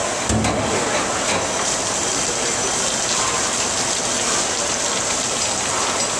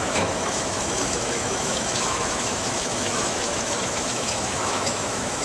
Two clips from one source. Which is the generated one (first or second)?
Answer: second